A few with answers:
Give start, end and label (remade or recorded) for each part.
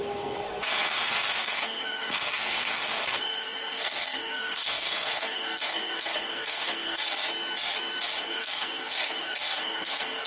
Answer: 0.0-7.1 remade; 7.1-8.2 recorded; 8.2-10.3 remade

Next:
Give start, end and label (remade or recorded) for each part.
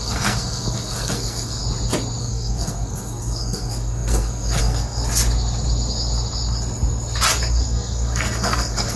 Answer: 0.0-1.6 remade; 1.6-2.2 recorded; 2.2-5.0 remade; 5.0-7.5 recorded; 7.5-9.0 remade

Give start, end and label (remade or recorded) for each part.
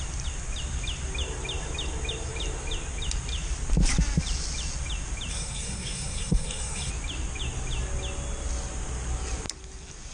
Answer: 0.0-5.3 recorded; 5.3-6.9 remade; 6.9-10.1 recorded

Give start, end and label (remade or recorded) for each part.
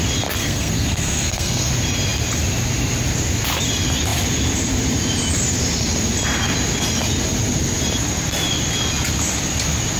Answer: 0.0-0.4 recorded; 0.4-1.7 remade; 1.7-10.0 recorded